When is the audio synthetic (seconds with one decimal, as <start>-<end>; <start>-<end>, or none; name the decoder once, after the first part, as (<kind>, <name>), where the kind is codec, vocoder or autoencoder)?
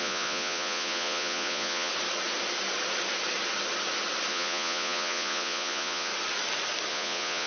0.0-1.9 (vocoder, Vocos); 4.3-6.1; 6.9-7.5